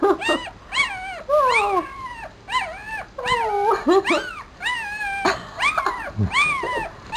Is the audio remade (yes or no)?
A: no